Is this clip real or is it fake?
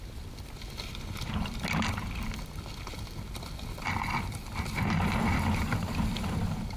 real